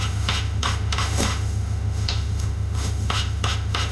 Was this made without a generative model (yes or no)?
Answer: no